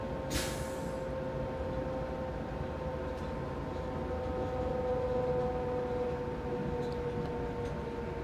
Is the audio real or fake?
real